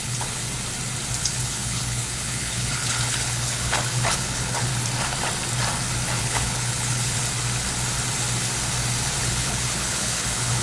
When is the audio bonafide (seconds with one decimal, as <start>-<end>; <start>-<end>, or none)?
0.4-1.2; 4.7-6.2; 7.2-9.2